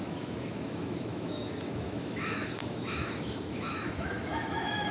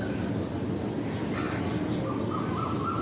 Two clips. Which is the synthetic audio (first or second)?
first